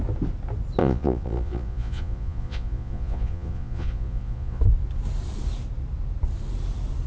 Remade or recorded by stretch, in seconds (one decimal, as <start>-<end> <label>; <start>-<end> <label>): 0.0-0.8 recorded; 0.8-4.6 remade; 4.6-7.1 recorded